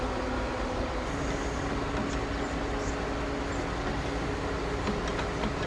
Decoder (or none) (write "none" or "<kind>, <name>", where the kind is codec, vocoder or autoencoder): none